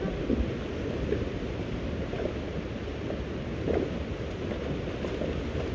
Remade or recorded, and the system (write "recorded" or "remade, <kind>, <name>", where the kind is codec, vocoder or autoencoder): recorded